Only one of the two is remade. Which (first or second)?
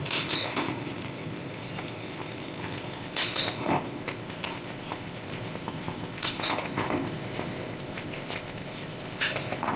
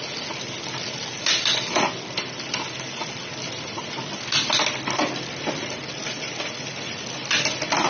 first